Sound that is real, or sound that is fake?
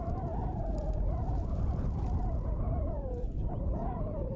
real